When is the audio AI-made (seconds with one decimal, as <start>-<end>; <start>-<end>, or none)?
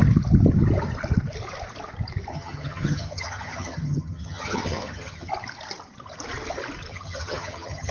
2.3-5.3; 6.9-7.9